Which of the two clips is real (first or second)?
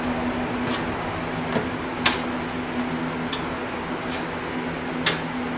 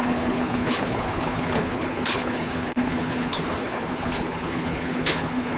first